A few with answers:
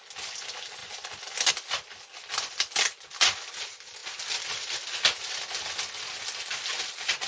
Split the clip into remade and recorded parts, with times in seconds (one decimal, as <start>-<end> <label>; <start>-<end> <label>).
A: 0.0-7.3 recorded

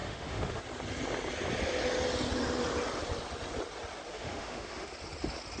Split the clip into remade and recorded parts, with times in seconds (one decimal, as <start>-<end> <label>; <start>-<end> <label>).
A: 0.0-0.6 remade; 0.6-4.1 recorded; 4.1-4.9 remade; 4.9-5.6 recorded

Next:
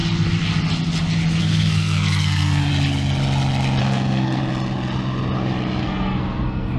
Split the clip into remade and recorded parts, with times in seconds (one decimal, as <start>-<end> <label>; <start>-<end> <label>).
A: 0.0-1.4 recorded; 1.4-2.7 remade; 2.7-3.8 recorded; 3.8-4.4 remade; 4.4-5.8 recorded; 5.8-6.8 remade

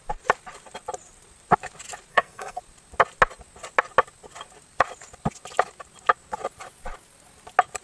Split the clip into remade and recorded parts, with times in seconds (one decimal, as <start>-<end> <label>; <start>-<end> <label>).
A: 0.0-2.1 recorded; 2.1-2.6 remade; 2.6-7.8 recorded

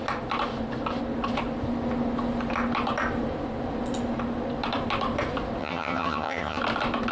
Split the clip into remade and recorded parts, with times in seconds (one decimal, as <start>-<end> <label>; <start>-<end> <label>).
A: 0.0-5.6 recorded; 5.6-6.6 remade; 6.6-7.1 recorded